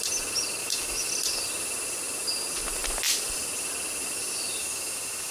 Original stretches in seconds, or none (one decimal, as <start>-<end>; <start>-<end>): 0.0-0.6; 1.1-4.6